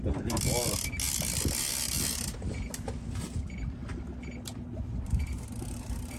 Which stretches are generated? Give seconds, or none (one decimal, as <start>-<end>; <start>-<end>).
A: none